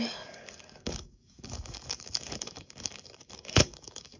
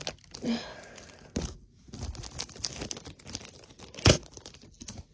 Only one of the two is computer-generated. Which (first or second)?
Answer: first